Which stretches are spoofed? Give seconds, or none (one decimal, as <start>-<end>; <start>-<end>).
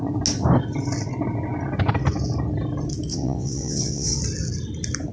3.1-4.2